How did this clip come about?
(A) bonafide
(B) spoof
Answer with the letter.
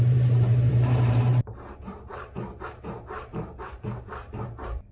B